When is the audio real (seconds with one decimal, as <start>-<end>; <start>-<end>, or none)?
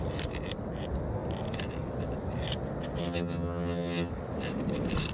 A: 0.0-3.0; 4.1-5.1